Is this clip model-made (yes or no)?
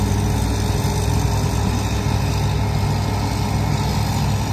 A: no